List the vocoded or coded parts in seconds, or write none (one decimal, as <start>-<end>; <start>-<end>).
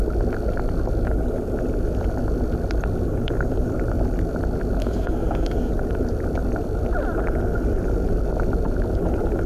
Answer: 4.8-5.7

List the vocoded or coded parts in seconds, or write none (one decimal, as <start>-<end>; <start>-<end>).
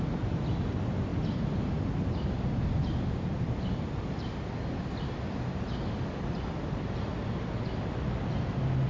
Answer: none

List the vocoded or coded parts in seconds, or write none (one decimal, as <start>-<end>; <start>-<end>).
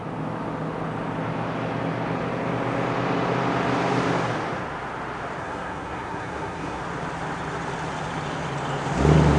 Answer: 5.4-6.8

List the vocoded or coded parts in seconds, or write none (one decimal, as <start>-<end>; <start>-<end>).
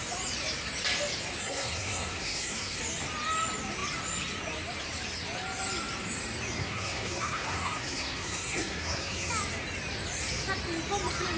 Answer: 1.4-2.8; 6.6-9.3